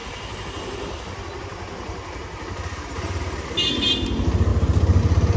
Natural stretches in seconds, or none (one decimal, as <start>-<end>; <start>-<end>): 0.0-5.4